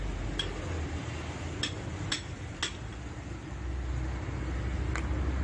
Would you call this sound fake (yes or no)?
no